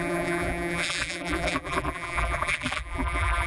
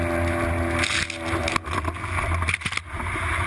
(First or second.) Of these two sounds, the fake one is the first